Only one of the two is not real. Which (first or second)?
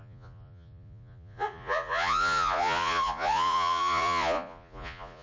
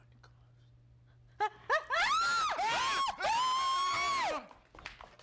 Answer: first